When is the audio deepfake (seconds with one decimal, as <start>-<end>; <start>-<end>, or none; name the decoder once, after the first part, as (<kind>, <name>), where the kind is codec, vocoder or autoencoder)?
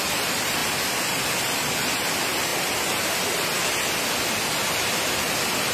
none